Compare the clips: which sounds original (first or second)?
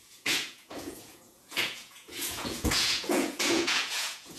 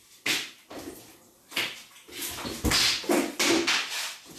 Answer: second